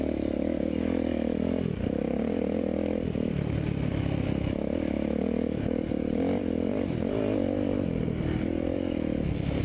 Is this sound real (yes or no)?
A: yes